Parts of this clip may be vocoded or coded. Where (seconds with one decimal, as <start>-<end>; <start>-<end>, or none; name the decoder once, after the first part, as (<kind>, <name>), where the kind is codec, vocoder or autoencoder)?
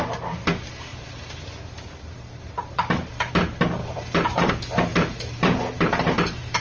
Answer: 0.9-3.3 (vocoder, BigVGAN v2); 3.8-4.5; 4.9-6.6